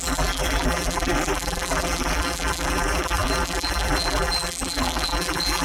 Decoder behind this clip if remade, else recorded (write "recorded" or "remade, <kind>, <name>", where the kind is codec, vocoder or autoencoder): remade, vocoder, BigVGAN v2